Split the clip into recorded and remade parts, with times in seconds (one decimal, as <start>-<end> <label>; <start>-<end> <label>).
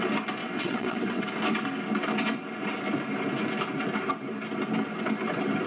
0.0-0.4 recorded; 0.4-1.2 remade; 1.2-5.7 recorded